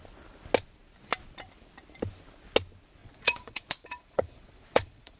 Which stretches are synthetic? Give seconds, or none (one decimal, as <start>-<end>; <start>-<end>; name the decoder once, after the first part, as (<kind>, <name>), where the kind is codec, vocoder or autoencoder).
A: 3.0-5.2 (vocoder, Vocos)